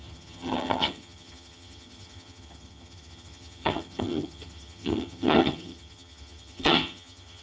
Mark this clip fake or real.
fake